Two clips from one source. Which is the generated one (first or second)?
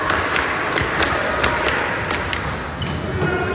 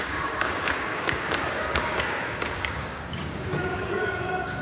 second